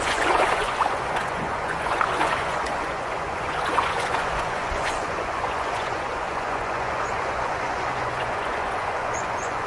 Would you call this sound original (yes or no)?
no